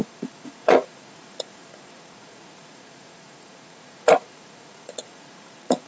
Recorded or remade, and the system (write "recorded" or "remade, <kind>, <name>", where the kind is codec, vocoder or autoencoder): remade, vocoder, Vocos